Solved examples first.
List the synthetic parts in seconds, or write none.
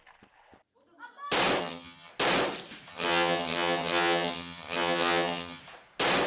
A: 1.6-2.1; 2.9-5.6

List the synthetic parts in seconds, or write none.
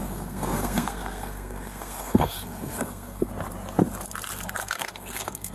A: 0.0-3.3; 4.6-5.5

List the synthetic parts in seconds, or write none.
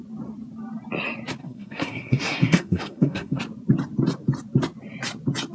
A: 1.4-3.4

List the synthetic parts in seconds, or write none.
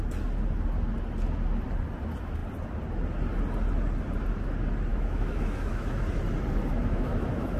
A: 4.9-6.0; 6.7-7.6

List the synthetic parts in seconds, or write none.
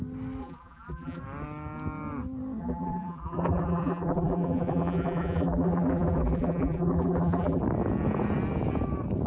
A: 0.4-1.2; 2.6-7.6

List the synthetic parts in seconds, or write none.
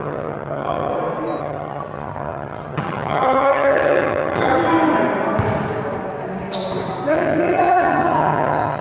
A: 0.0-0.9; 1.4-4.5; 7.1-8.8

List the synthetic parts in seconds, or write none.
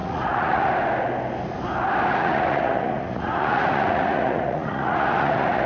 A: 0.0-0.7; 2.1-5.7